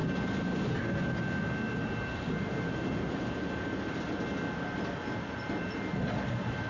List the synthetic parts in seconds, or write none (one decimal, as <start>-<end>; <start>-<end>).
none